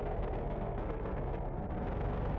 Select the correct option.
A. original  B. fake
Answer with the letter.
B